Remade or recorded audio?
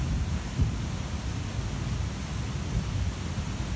recorded